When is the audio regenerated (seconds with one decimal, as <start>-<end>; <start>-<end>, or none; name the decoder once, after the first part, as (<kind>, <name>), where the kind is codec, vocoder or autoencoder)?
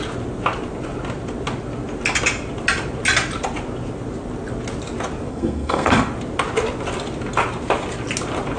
5.3-6.1 (codec, SNAC)